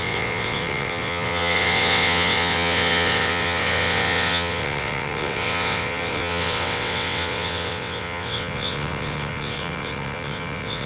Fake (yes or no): yes